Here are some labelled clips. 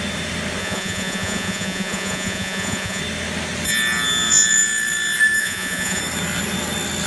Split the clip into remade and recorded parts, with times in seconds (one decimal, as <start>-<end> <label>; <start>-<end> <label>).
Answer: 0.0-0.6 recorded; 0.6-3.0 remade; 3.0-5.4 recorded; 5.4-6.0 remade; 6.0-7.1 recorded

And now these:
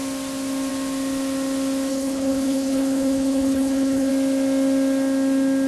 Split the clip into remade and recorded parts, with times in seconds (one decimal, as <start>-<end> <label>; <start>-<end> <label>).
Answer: 0.0-1.9 recorded; 1.9-4.1 remade; 4.1-5.7 recorded

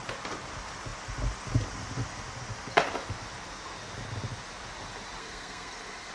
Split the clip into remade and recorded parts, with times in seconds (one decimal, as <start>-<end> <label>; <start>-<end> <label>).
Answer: 0.0-5.2 recorded; 5.2-6.1 remade